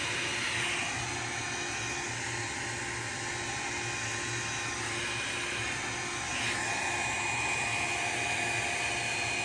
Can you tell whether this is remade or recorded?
recorded